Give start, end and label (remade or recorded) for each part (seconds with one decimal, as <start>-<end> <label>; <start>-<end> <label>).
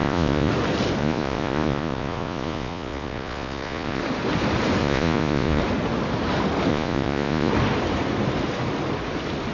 0.0-0.5 remade; 0.5-1.0 recorded; 1.0-4.0 remade; 4.0-4.8 recorded; 4.8-5.6 remade; 5.6-6.7 recorded; 6.7-7.5 remade; 7.5-9.5 recorded